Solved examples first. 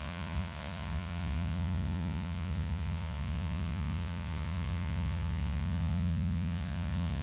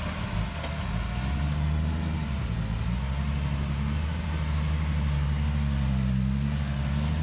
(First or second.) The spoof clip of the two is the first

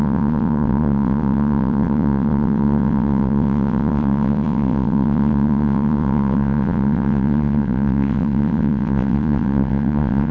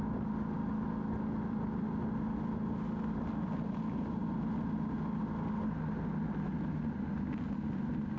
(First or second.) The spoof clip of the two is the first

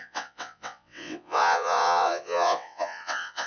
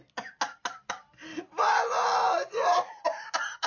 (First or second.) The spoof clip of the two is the first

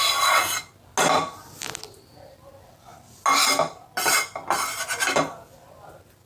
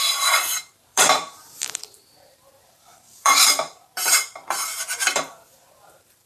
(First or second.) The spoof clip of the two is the second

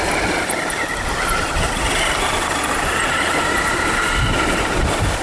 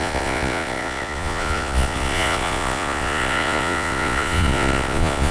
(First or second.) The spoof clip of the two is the second